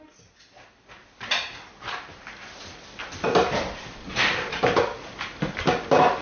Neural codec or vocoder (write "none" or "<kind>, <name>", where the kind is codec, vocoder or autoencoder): none